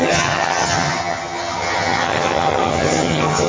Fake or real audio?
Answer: fake